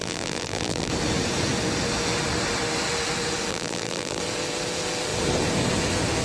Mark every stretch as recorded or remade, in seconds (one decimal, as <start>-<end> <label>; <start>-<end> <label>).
0.0-0.9 remade; 0.9-3.5 recorded; 3.5-4.2 remade; 4.2-6.2 recorded